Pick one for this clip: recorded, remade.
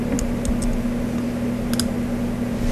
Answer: recorded